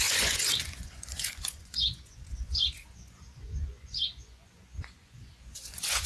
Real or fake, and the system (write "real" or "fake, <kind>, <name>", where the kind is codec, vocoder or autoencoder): fake, vocoder, Vocos